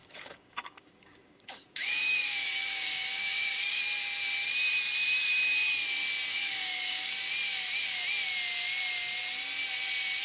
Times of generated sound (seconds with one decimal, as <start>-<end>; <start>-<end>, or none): 0.0-3.8; 6.3-7.1